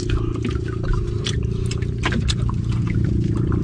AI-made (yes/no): no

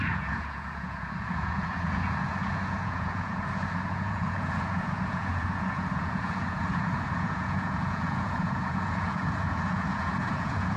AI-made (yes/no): yes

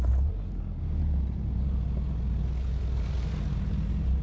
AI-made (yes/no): no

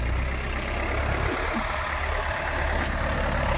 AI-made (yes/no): no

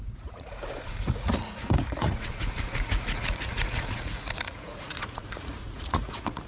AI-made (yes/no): yes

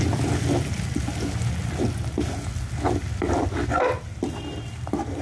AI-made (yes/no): no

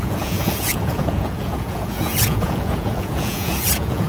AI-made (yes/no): yes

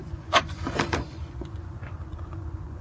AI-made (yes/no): yes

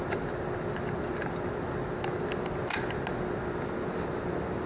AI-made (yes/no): no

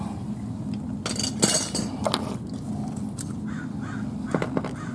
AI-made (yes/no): no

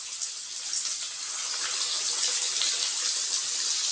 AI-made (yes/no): no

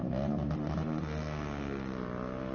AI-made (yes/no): no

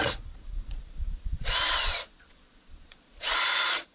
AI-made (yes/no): yes